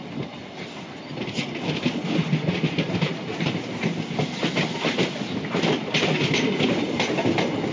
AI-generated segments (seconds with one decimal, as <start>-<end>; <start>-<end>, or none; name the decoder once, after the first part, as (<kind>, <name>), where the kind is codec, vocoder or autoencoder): none